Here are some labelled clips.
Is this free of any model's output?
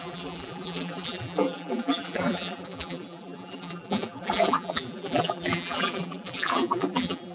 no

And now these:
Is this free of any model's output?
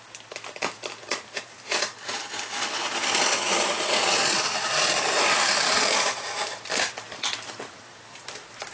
no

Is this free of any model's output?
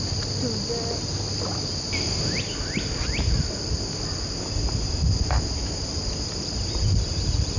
yes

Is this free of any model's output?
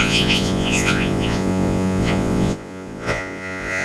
no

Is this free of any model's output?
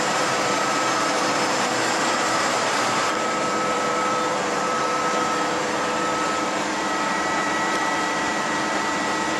no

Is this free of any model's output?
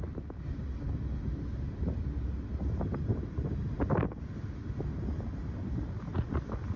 yes